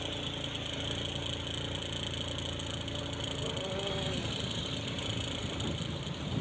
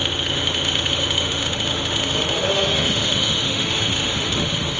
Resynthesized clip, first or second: second